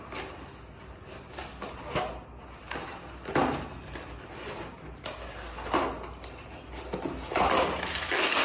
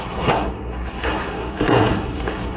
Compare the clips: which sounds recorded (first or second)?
first